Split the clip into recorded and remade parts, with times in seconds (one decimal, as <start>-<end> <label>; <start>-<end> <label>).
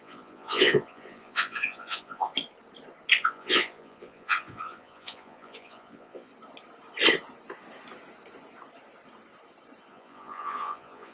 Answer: 0.0-2.3 remade; 2.3-3.2 recorded; 3.2-6.3 remade; 6.3-9.9 recorded; 9.9-11.1 remade